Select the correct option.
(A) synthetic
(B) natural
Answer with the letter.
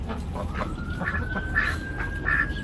B